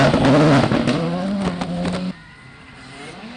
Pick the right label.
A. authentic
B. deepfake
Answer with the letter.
A